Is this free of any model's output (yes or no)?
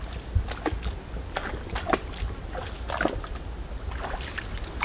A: yes